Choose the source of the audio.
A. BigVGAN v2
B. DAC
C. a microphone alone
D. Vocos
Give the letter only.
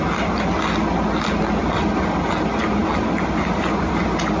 C